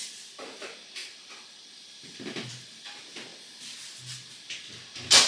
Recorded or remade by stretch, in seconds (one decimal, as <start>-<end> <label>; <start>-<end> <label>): 0.0-1.0 recorded; 1.0-1.7 remade; 1.7-5.3 recorded